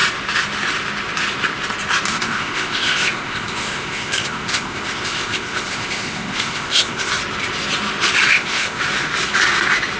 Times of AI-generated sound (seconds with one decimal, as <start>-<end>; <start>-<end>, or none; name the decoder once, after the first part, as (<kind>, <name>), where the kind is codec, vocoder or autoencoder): 2.1-7.1 (codec, ZipCodec); 8.3-8.8